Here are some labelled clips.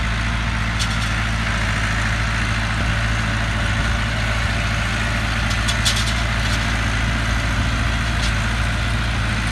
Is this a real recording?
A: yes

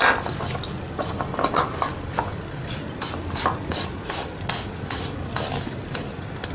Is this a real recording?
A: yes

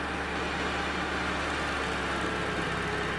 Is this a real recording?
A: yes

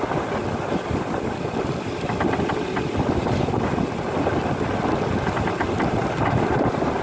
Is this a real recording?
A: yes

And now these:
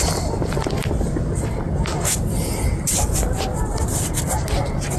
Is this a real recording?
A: yes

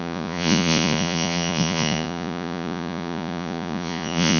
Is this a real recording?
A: no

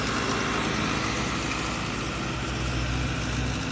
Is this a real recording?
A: yes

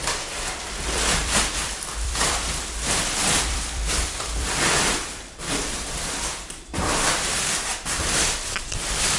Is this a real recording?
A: no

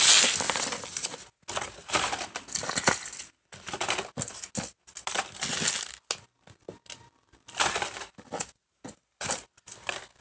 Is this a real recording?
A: yes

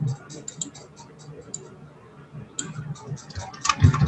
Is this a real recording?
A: yes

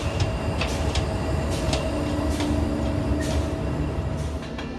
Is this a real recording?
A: yes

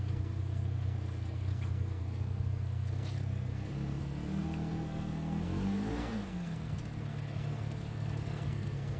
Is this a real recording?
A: no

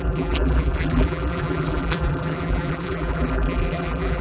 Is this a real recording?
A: no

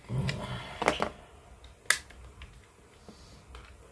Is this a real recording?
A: yes